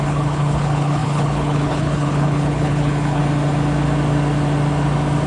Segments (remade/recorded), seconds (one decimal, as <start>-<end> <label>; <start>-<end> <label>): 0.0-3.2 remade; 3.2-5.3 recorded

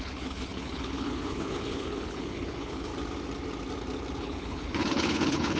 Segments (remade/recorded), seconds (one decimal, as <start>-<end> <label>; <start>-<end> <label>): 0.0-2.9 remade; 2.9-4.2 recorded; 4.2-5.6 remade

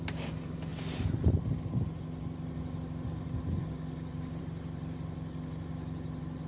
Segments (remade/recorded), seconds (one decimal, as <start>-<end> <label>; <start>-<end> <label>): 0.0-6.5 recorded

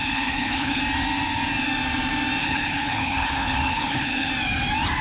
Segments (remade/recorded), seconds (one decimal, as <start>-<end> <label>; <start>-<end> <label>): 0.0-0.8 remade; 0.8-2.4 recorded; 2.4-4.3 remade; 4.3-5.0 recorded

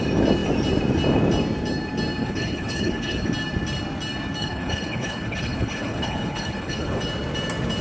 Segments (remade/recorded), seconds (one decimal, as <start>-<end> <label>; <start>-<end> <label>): 0.0-2.2 recorded; 2.2-3.3 remade; 3.3-4.4 recorded; 4.4-7.0 remade; 7.0-7.8 recorded

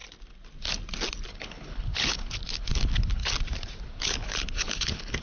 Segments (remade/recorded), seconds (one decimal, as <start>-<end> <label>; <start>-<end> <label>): 0.0-1.3 recorded; 1.3-3.2 remade; 3.2-3.8 recorded; 3.8-5.2 remade

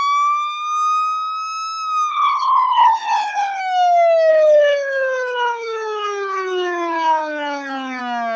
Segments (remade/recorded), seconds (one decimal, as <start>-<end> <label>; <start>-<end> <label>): 0.0-2.1 recorded; 2.1-3.6 remade; 3.6-4.3 recorded; 4.3-8.0 remade; 8.0-8.4 recorded

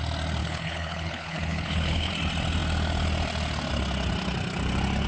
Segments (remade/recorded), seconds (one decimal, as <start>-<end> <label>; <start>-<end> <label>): 0.0-0.4 recorded; 0.4-2.1 remade; 2.1-5.1 recorded